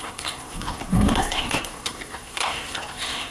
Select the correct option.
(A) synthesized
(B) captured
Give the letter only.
A